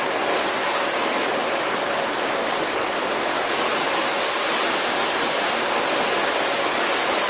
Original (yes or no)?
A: yes